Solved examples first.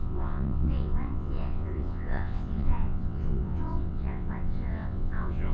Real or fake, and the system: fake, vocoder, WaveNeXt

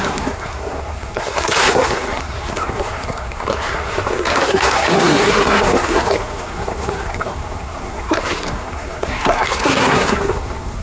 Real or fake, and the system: fake, codec, SNAC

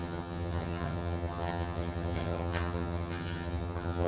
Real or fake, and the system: fake, vocoder, HiFi-GAN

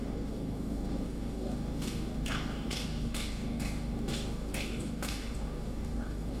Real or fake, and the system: fake, codec, DAC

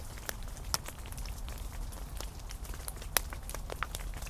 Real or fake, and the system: real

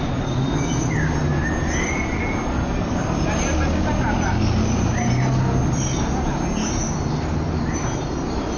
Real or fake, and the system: real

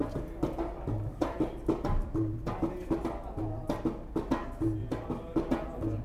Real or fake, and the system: real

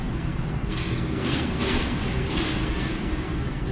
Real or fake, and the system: fake, codec, SNAC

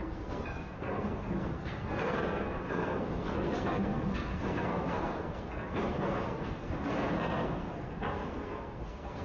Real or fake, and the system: fake, codec, SNAC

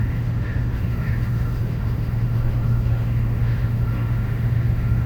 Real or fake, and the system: fake, autoencoder, DAC-VAE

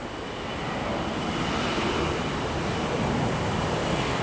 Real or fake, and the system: real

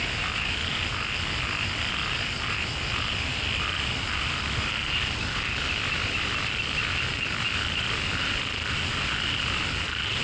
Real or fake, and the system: real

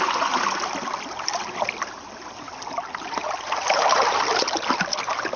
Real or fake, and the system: real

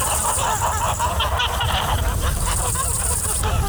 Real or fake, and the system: fake, vocoder, BigVGAN v2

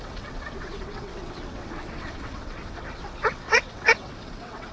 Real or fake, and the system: fake, vocoder, WaveNeXt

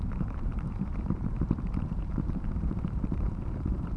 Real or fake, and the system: fake, vocoder, BigVGAN v2